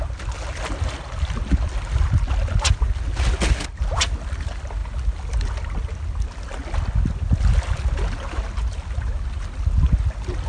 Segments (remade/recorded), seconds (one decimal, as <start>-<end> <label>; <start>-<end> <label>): 0.0-10.5 recorded